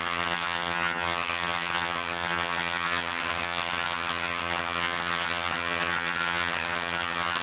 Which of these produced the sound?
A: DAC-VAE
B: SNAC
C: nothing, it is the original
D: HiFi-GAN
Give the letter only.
D